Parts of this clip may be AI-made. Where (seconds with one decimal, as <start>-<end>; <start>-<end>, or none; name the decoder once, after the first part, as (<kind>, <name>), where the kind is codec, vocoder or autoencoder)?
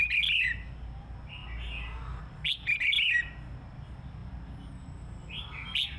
none